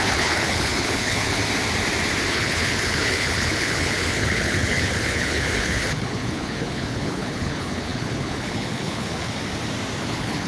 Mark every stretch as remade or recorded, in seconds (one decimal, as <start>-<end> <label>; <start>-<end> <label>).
0.0-1.4 remade; 1.4-2.3 recorded; 2.3-9.4 remade; 9.4-10.0 recorded; 10.0-10.5 remade